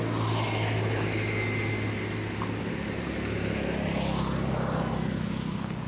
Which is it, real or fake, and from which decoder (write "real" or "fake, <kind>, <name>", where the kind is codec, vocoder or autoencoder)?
real